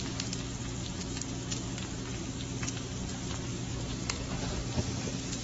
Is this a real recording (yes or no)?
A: yes